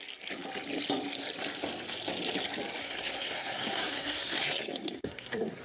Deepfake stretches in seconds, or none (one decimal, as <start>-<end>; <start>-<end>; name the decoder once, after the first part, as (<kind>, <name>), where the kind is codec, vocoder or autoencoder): 2.8-5.6 (codec, SNAC)